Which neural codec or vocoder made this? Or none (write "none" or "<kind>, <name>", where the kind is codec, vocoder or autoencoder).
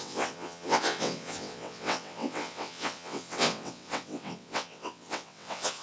vocoder, WaveNeXt